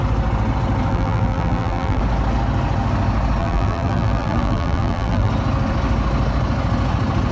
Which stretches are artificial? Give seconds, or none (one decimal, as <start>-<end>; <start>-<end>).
0.9-2.0; 3.4-5.3